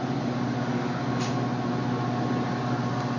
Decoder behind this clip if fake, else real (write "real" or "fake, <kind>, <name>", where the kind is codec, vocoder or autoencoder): real